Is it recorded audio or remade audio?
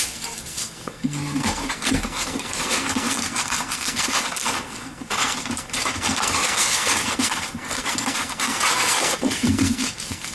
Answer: remade